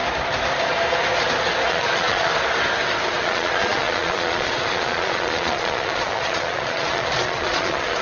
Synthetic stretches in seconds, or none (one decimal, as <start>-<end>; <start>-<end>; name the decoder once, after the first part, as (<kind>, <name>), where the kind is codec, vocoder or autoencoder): 1.7-2.3 (vocoder, Vocos); 3.2-8.0